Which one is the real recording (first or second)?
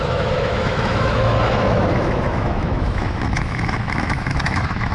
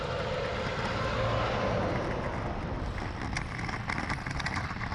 second